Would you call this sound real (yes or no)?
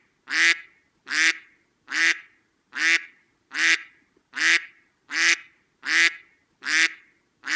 yes